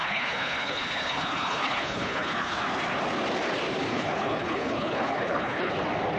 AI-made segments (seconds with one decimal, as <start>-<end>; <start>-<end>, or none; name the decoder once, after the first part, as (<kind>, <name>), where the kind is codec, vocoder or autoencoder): 0.0-2.6 (codec, HILCodec); 3.9-5.7